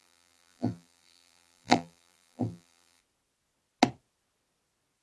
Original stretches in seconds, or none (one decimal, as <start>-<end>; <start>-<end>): 3.0-5.0

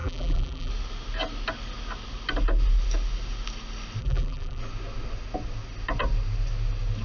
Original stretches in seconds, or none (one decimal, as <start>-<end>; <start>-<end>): 0.7-4.0; 4.6-7.0

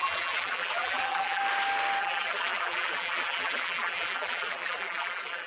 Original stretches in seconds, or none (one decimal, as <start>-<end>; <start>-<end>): 1.4-2.0

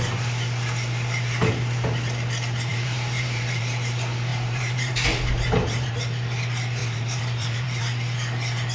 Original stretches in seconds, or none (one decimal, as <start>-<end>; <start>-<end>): 0.0-2.7; 3.6-4.3; 5.9-6.8; 7.8-8.7

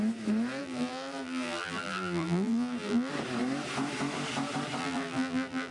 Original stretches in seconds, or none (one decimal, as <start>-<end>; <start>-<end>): 0.0-0.6; 3.1-4.8

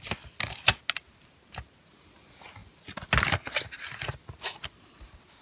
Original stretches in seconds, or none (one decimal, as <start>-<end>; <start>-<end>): 0.0-5.4

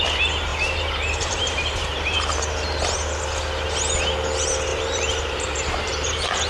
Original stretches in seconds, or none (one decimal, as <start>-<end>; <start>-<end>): 0.0-0.5; 2.4-4.7